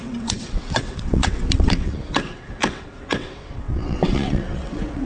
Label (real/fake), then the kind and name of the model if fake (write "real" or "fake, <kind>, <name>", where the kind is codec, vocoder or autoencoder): fake, vocoder, WaveNeXt